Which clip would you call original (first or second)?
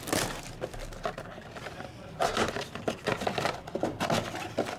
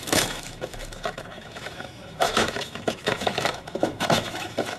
first